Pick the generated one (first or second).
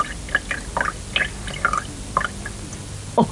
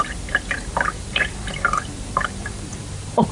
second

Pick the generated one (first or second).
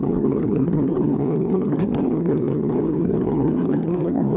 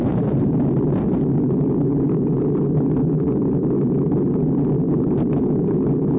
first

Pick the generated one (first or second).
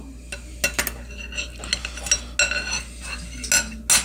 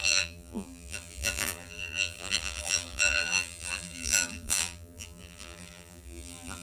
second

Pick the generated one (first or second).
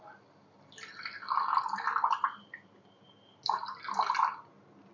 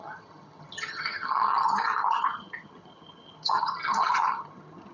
second